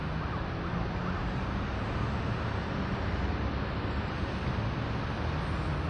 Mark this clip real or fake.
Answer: real